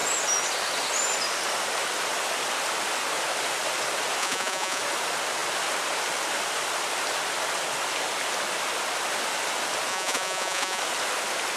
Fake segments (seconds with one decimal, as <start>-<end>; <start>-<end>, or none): 4.2-4.8; 9.9-10.8